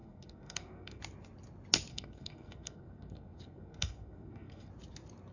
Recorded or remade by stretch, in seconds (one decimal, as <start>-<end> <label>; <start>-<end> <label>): 0.0-1.0 remade; 1.0-1.9 recorded; 1.9-4.7 remade; 4.7-5.3 recorded